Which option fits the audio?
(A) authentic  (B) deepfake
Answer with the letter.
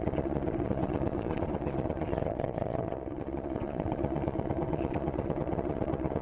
B